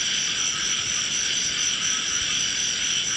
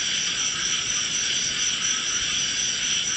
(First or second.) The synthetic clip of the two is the second